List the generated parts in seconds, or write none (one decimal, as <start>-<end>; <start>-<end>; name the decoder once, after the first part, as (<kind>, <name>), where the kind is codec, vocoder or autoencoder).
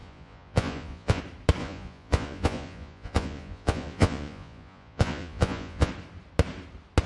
0.0-1.2 (vocoder, Vocos); 1.6-5.9